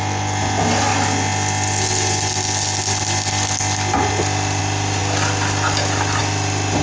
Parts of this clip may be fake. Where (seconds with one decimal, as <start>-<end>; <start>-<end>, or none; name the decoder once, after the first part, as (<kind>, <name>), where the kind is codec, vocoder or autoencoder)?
none

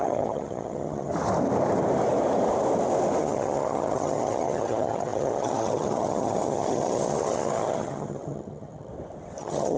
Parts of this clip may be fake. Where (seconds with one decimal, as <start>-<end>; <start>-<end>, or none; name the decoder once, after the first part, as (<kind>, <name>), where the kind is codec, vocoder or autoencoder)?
0.0-1.1 (vocoder, HiFi-GAN); 3.2-8.9; 9.4-9.8